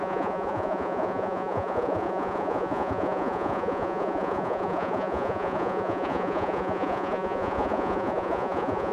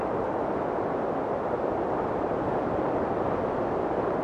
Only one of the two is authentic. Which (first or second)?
second